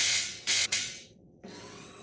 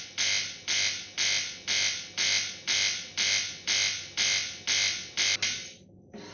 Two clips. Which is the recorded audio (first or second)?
second